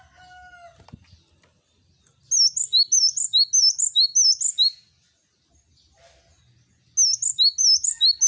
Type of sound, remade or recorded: recorded